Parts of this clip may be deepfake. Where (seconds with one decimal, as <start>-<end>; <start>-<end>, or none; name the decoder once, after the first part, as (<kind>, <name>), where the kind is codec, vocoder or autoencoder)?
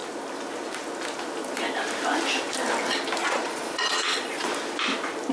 3.2-4.5 (vocoder, Vocos)